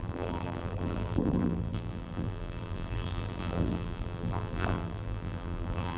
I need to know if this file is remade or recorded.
remade